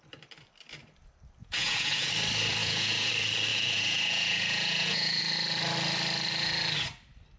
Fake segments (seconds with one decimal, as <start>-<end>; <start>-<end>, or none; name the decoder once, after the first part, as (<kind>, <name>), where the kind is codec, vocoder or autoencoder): 1.4-2.1 (vocoder, Vocos); 2.6-3.1; 3.5-5.2